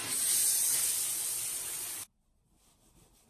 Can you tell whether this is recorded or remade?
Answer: recorded